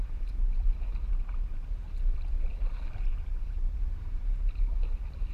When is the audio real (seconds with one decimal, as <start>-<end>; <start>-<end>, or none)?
0.0-0.4; 1.5-5.3